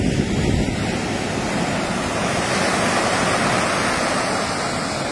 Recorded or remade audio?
recorded